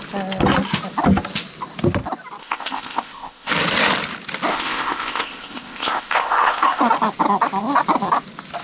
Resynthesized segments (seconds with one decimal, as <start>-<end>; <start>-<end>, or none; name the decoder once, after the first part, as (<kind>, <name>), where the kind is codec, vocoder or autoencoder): 2.4-3.5 (codec, ZipCodec); 4.5-6.8